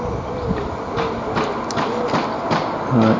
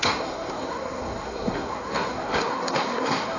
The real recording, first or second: first